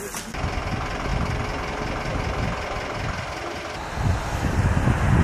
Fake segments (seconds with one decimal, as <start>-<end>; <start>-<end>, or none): none